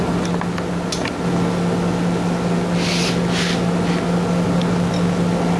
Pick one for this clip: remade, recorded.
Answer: recorded